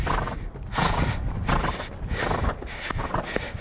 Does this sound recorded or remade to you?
recorded